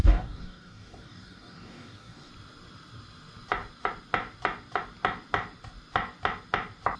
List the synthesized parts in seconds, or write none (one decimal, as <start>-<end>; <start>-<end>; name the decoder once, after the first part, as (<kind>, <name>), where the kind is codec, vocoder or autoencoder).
0.0-2.3 (codec, DAC)